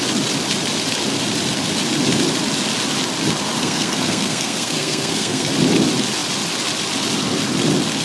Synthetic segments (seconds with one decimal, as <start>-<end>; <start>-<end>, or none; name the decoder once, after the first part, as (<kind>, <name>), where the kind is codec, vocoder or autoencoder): 3.6-5.5 (codec, SNAC)